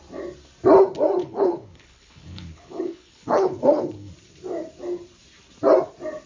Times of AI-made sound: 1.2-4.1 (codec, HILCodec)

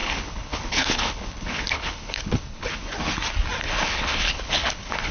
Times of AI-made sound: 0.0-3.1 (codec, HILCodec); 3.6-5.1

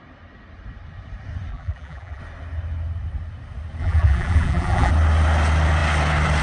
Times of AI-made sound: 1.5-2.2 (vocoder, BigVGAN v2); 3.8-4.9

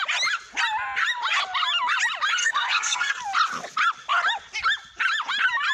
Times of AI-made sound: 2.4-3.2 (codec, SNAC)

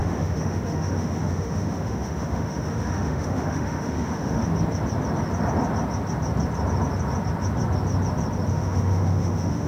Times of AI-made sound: 0.0-4.4 (autoencoder, DAC-VAE); 8.5-9.7

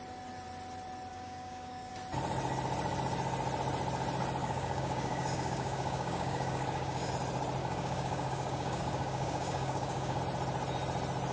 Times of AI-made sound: 1.1-1.9 (codec, DAC); 4.4-7.1; 7.6-10.2